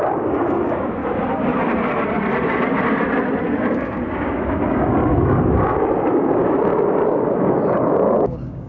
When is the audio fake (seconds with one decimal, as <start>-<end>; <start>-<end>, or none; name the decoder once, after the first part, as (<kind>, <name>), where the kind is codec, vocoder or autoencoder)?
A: 0.0-1.0 (codec, DAC); 3.6-6.7; 7.2-8.7